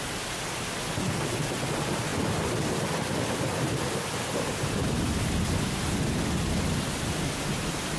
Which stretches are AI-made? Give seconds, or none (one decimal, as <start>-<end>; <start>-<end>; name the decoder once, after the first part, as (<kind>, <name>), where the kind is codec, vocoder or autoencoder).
none